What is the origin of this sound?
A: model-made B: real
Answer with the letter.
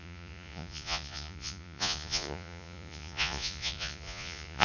A